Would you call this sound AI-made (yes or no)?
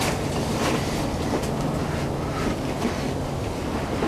no